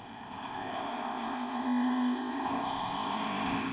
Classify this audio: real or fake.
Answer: fake